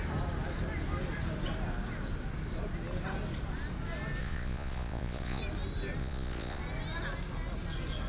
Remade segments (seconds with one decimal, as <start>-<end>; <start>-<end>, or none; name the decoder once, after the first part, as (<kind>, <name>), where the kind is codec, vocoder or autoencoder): 4.2-5.4 (vocoder, Vocos); 6.0-6.6